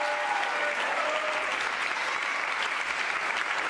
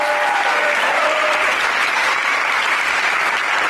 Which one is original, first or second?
first